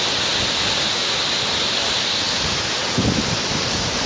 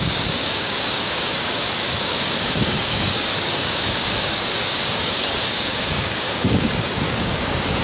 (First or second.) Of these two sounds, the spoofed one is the second